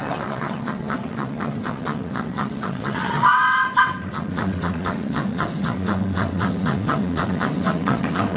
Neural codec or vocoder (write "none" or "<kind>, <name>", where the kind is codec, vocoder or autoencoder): vocoder, WaveNeXt